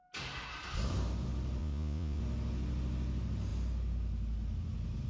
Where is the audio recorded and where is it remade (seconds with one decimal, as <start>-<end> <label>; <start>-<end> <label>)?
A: 0.0-1.6 recorded; 1.6-2.2 remade; 2.2-5.1 recorded